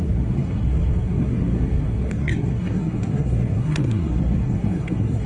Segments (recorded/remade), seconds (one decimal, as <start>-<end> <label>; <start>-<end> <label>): 0.0-5.3 remade